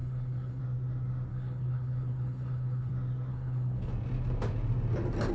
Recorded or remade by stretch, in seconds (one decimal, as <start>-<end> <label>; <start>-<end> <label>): 0.0-0.6 remade; 0.6-1.3 recorded; 1.3-2.9 remade; 2.9-3.3 recorded; 3.3-3.9 remade; 3.9-5.3 recorded